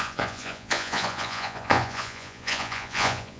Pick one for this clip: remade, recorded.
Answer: remade